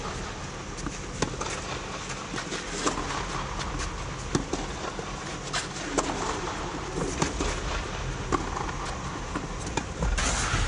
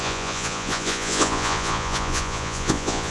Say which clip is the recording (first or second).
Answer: first